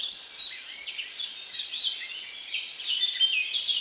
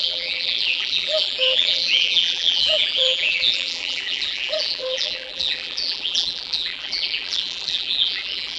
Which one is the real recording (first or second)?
first